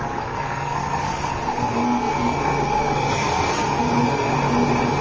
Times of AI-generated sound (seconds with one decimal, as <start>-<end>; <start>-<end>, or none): 0.0-4.3